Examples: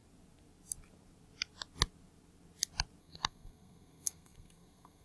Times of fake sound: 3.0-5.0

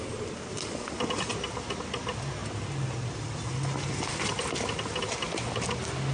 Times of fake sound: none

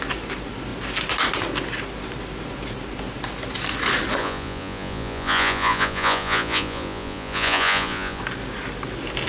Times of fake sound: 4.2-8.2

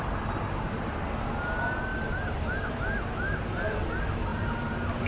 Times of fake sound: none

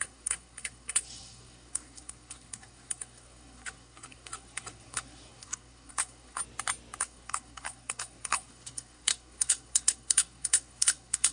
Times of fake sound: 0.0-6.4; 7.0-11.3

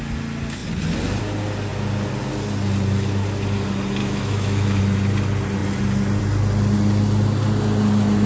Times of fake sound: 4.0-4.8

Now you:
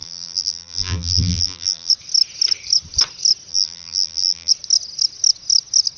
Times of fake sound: 0.0-1.9; 3.5-4.5

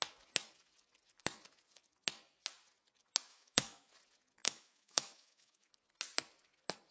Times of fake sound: 3.3-3.9; 4.4-5.7